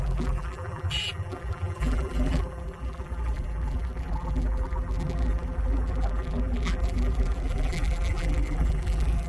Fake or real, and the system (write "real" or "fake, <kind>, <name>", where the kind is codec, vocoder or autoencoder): fake, vocoder, BigVGAN v2